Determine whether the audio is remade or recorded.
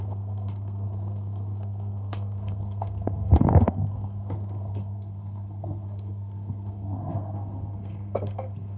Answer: remade